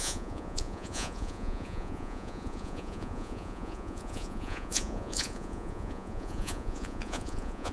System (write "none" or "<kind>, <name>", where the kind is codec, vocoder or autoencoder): vocoder, Vocos